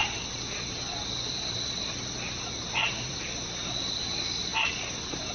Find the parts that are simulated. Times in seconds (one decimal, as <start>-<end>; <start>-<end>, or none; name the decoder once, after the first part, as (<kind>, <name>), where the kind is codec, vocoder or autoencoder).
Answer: none